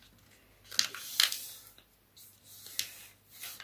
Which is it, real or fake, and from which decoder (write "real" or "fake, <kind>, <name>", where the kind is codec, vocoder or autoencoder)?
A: real